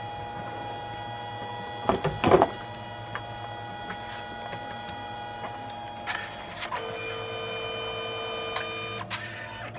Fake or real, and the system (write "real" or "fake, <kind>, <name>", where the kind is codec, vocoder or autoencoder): real